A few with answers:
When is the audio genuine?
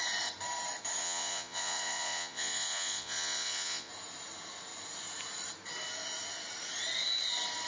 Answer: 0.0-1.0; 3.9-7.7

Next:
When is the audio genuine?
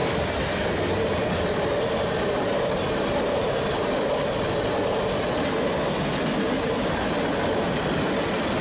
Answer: 0.0-8.6